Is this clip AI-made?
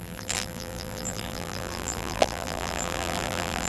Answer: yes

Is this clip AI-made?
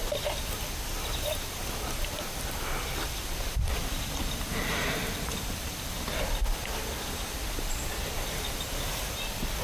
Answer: no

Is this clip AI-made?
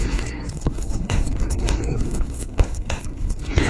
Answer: yes